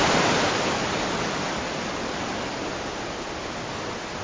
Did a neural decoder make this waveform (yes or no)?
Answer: no